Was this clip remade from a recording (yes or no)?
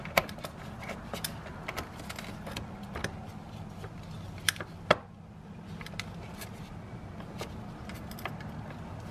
no